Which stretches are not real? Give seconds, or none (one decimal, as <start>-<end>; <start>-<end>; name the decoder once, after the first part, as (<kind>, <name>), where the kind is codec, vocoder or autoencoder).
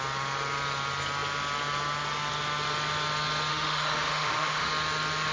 3.5-4.7 (autoencoder, DAC-VAE)